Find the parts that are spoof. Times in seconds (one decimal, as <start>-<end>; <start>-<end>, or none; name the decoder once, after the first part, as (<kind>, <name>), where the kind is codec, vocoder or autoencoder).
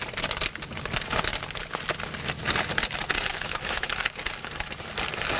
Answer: 3.3-3.9 (autoencoder, DAC-VAE)